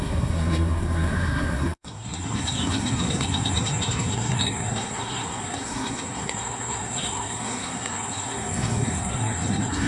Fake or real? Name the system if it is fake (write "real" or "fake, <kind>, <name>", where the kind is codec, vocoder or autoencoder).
fake, codec, SNAC